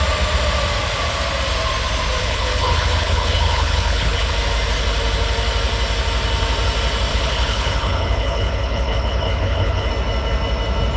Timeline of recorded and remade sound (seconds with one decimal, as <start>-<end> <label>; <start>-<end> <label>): 0.0-2.2 recorded; 2.2-4.3 remade; 4.3-7.1 recorded; 7.1-9.9 remade; 9.9-11.0 recorded

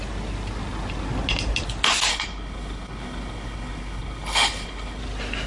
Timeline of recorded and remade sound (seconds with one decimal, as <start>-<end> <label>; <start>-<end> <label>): 0.0-2.1 recorded; 2.1-5.0 remade; 5.0-5.5 recorded

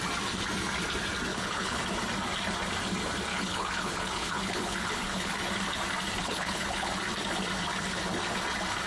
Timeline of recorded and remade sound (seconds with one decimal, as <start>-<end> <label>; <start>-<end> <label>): 0.0-1.3 recorded; 1.3-1.8 remade; 1.8-3.3 recorded; 3.3-5.3 remade; 5.3-6.2 recorded; 6.2-6.9 remade; 6.9-8.9 recorded

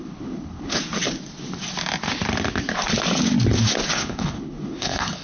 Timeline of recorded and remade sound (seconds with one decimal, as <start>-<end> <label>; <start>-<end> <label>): 0.0-0.8 remade; 0.8-3.9 recorded; 3.9-5.2 remade